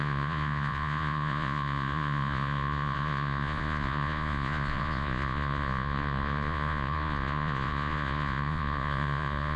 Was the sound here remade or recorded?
remade